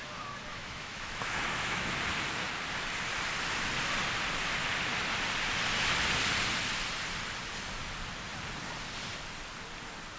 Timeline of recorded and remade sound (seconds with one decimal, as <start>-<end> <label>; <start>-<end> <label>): 0.0-0.5 recorded; 0.5-2.0 remade; 2.0-10.2 recorded